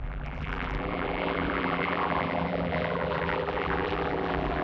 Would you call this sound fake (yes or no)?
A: yes